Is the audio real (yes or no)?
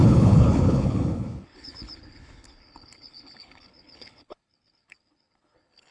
no